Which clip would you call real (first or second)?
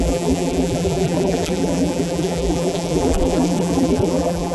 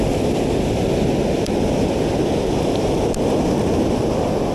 second